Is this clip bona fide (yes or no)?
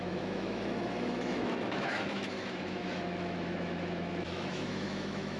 no